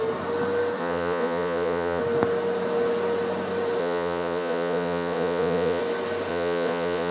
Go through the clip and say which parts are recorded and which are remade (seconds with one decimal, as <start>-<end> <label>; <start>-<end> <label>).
0.0-0.8 recorded; 0.8-2.0 remade; 2.0-3.8 recorded; 3.8-5.8 remade; 5.8-6.3 recorded; 6.3-7.1 remade